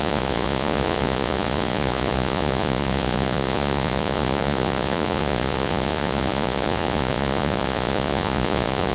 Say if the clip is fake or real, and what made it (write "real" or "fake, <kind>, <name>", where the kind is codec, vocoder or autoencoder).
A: fake, vocoder, Vocos